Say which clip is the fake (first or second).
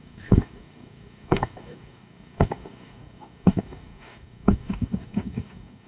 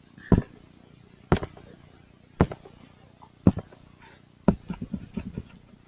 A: first